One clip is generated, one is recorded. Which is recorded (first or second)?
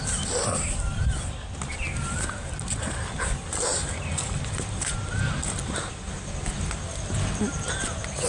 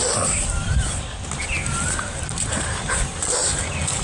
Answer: first